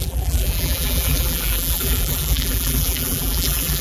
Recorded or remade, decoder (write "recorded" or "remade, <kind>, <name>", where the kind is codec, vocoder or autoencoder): remade, vocoder, BigVGAN v2